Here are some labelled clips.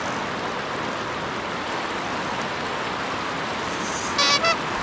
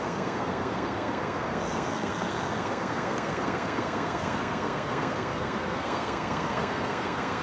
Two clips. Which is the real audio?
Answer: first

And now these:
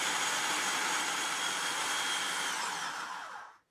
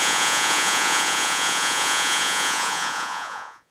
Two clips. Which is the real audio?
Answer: first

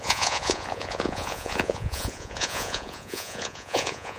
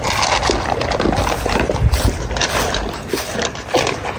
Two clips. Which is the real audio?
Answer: second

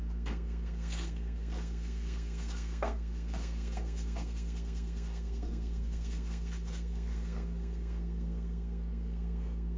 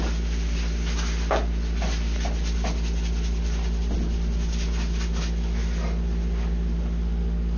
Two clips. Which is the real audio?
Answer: second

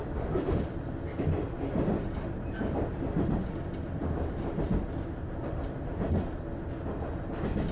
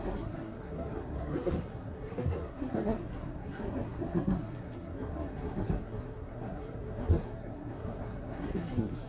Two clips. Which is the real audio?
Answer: first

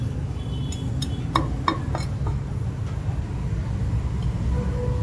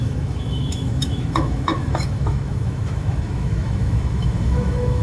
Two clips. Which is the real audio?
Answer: first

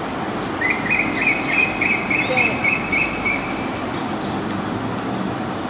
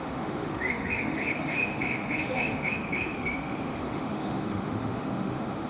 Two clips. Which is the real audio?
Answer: first